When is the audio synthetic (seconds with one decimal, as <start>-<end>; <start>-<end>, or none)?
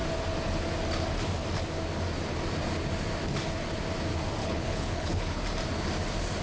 4.4-5.4